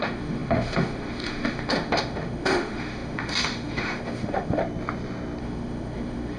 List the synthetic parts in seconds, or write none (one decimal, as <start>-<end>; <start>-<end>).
0.0-4.6; 5.4-6.4